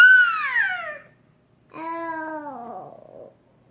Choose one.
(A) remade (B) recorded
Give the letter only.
B